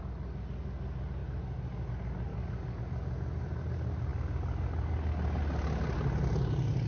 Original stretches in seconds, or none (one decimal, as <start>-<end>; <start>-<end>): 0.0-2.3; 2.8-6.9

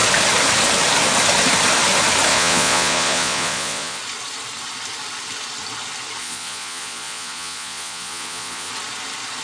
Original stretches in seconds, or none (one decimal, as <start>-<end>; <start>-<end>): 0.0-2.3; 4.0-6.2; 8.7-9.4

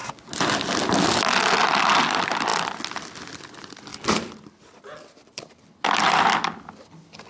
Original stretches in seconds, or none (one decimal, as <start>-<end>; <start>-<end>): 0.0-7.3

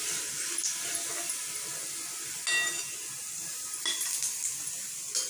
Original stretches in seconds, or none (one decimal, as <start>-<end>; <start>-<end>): 0.0-5.3

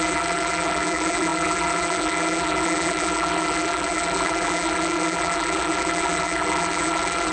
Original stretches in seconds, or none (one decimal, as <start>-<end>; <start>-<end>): none

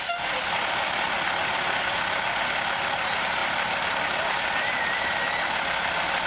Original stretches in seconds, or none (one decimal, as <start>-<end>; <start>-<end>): 0.0-6.3